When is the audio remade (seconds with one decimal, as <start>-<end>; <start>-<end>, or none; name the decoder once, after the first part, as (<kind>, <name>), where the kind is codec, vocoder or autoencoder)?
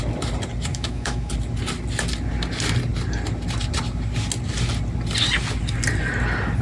0.7-1.3 (autoencoder, DAC-VAE)